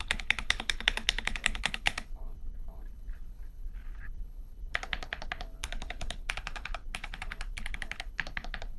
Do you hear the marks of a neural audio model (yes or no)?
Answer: yes